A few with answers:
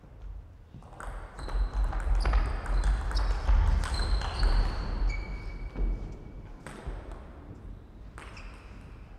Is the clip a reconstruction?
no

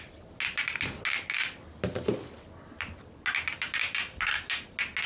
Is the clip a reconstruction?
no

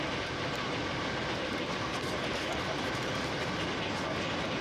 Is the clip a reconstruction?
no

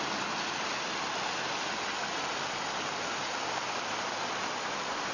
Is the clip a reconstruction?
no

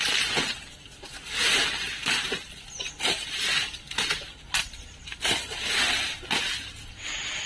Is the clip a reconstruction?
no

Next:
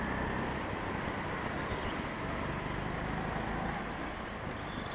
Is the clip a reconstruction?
no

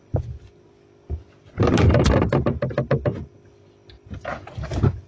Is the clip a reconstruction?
no